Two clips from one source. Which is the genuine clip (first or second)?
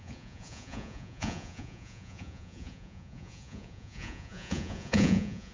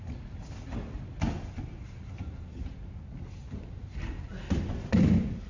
second